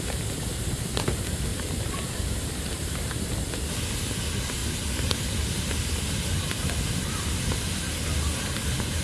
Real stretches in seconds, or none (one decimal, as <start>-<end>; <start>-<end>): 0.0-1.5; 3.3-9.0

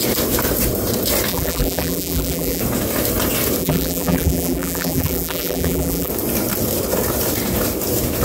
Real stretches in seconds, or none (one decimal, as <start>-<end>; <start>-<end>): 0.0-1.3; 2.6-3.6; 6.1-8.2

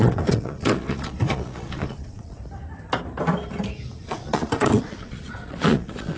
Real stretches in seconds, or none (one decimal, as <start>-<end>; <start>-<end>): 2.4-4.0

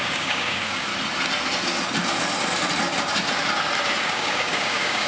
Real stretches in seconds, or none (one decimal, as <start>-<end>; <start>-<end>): 0.9-4.0